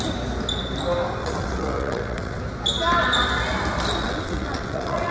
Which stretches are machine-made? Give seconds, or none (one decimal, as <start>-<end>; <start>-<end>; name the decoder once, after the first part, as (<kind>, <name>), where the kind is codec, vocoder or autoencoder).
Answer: 1.2-2.4 (vocoder, WaveNeXt); 4.0-5.1